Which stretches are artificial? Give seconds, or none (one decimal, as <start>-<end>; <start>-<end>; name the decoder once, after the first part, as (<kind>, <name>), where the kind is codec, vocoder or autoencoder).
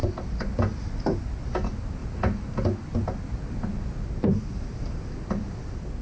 none